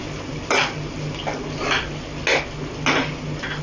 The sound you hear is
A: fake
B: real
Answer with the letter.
B